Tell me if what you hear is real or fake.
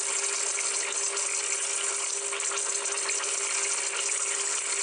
real